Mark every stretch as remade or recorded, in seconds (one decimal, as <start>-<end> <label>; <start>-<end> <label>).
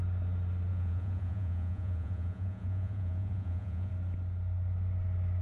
0.0-0.7 recorded; 0.7-3.9 remade; 3.9-5.4 recorded